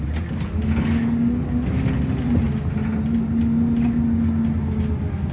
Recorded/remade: recorded